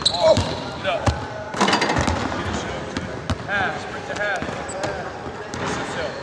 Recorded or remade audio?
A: recorded